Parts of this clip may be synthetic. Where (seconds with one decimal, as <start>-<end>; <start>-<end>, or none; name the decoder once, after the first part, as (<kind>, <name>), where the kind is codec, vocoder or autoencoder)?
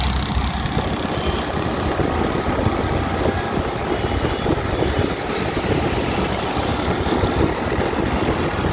none